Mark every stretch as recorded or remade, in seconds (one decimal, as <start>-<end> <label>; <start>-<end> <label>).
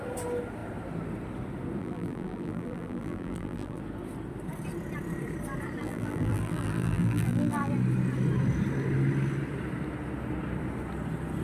0.0-1.8 recorded; 1.8-3.8 remade; 3.8-5.8 recorded; 5.8-7.7 remade; 7.7-11.4 recorded